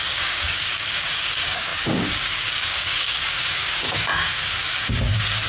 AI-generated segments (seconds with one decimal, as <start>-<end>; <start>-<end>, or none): 0.0-5.5